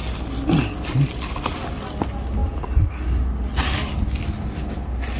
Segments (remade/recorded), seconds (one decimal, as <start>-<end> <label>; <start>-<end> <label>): 0.0-5.2 recorded